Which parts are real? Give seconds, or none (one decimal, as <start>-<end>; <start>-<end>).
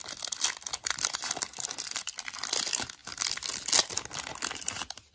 0.0-5.1